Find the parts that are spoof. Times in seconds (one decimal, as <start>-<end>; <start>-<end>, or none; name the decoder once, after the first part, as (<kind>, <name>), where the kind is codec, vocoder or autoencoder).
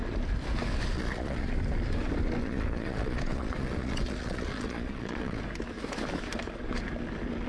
0.9-1.5 (vocoder, Vocos); 2.4-5.4